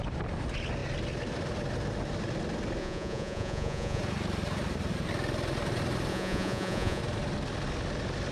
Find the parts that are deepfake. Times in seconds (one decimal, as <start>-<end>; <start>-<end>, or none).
2.8-4.0; 6.1-7.0

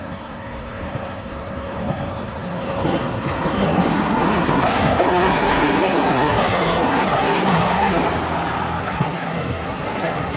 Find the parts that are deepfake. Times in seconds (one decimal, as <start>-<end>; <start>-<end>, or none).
0.0-8.0; 8.8-10.4

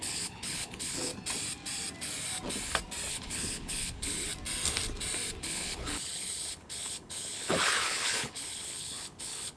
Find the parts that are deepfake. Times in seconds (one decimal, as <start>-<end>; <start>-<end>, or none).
0.0-1.1; 3.1-4.3; 5.4-9.6

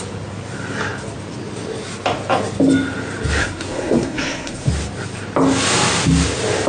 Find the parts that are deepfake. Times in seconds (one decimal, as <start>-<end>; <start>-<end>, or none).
3.4-4.7

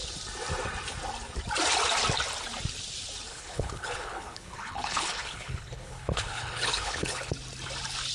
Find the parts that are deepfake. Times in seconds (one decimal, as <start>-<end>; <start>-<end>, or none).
3.3-7.3

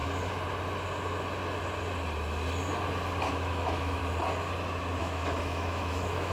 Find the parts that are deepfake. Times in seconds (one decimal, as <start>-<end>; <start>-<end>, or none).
3.3-4.0; 5.0-6.3

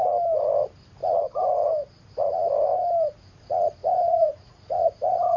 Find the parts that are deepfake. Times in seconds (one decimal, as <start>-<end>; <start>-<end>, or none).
3.8-5.4